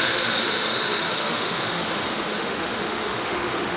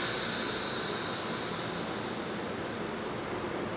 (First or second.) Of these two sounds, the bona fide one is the second